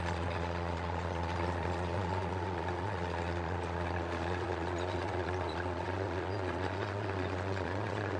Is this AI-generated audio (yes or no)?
yes